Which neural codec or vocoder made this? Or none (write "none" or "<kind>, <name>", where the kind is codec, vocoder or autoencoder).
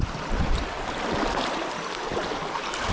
none